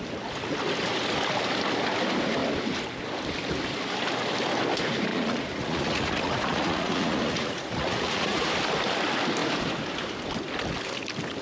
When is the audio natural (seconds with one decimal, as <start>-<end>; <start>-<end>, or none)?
0.0-5.1; 8.5-11.4